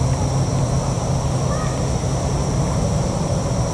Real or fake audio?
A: real